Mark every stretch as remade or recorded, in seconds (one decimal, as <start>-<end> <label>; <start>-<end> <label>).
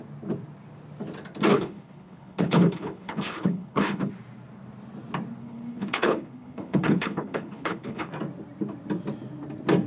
0.0-1.5 recorded; 1.5-4.1 remade; 4.1-5.4 recorded; 5.4-8.1 remade; 8.1-9.9 recorded